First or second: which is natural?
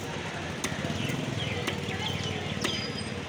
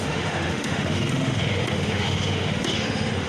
first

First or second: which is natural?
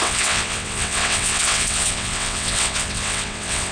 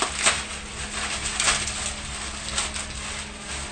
second